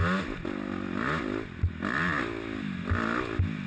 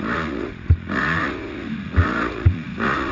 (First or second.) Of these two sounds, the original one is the first